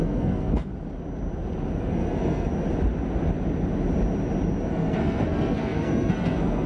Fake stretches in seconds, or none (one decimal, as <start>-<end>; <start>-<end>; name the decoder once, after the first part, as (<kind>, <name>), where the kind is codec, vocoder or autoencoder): 0.0-0.7 (codec, SNAC); 1.8-2.5; 4.7-6.7